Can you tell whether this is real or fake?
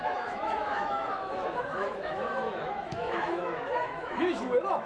fake